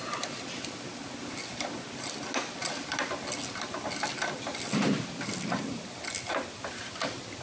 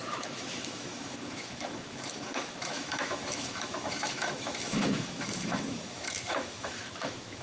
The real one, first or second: first